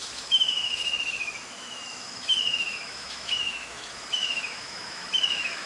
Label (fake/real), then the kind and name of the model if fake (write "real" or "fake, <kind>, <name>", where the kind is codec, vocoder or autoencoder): fake, autoencoder, DAC-VAE